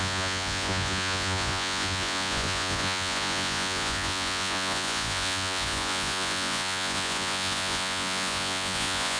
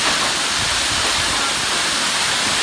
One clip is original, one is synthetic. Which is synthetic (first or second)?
first